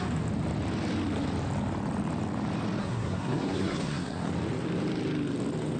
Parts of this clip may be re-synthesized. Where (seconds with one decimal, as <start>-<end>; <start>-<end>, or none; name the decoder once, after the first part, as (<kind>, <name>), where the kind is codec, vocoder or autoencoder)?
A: 2.8-4.3 (codec, SNAC)